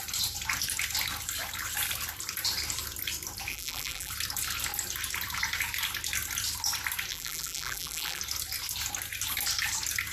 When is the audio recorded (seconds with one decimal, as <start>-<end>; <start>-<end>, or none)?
0.0-3.5; 4.1-7.1; 8.2-10.1